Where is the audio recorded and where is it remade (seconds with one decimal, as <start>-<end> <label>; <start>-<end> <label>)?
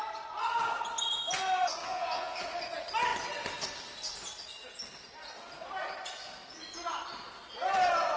0.0-1.8 recorded; 1.8-2.4 remade; 2.4-8.2 recorded